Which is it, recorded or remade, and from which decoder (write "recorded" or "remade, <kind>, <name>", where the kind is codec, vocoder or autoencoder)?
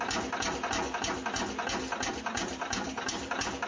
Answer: recorded